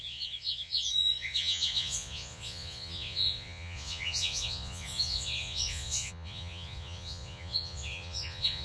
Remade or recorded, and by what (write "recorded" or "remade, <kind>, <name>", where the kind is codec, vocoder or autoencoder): remade, vocoder, Vocos